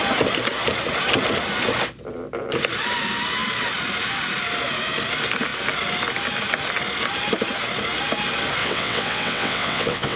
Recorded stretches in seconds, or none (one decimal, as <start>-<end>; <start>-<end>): 0.0-8.6